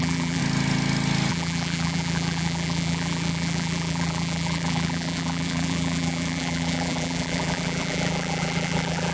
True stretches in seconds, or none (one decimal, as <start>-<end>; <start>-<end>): 0.4-1.3